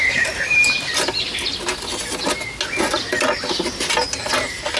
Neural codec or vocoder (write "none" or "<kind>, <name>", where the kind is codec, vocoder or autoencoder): none